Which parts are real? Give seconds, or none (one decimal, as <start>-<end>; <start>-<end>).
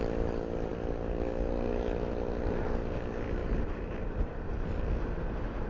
0.0-3.4; 4.5-5.7